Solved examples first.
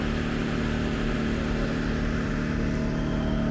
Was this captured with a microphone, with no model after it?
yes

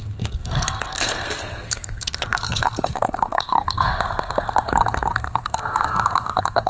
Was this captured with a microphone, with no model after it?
no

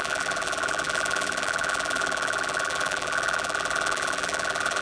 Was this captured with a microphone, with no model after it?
no